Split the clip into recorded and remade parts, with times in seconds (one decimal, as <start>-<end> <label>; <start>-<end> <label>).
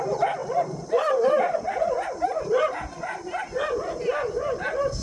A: 0.0-5.0 recorded